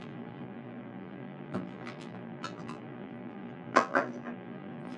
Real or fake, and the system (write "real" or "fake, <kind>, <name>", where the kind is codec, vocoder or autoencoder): fake, vocoder, BigVGAN v2